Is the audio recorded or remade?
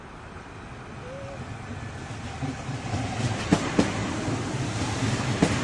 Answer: recorded